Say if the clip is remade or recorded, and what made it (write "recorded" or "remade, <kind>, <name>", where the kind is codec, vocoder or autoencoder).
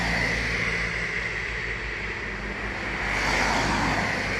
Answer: recorded